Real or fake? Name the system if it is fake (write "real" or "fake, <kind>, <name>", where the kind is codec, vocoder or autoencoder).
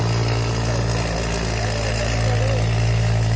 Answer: real